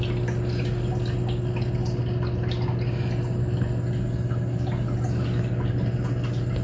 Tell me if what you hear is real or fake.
real